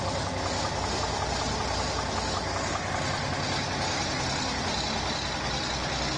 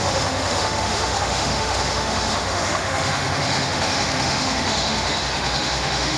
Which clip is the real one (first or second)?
first